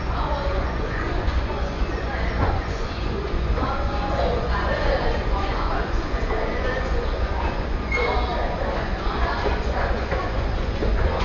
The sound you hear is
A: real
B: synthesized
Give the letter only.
B